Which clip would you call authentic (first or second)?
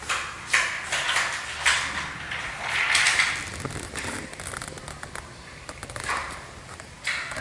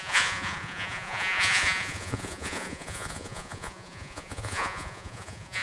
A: first